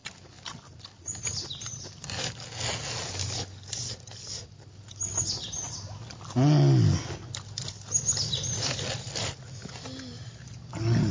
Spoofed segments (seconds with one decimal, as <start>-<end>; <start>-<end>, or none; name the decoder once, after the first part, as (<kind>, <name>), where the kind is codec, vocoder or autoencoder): none